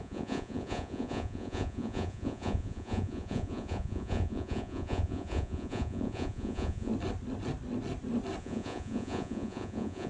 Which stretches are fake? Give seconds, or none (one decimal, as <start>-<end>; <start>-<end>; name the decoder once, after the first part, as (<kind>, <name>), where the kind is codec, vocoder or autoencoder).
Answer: 0.0-6.9 (vocoder, Vocos); 8.4-10.1